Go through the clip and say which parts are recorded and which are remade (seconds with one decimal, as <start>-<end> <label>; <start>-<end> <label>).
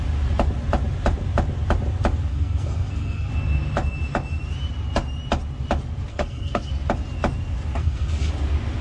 0.0-2.3 recorded; 2.3-3.3 remade; 3.3-6.1 recorded; 6.1-6.7 remade; 6.7-7.8 recorded; 7.8-8.3 remade; 8.3-8.8 recorded